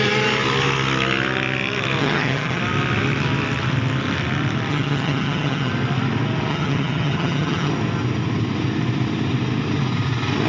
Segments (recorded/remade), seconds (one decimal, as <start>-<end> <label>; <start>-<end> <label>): 0.0-2.0 recorded; 2.0-2.6 remade; 2.6-4.7 recorded; 4.7-5.7 remade; 5.7-6.5 recorded; 6.5-7.7 remade; 7.7-10.5 recorded